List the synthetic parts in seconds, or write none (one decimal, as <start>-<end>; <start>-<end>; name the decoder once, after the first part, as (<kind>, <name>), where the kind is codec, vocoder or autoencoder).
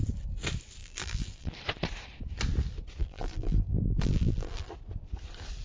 0.8-1.5 (vocoder, BigVGAN v2); 3.0-4.7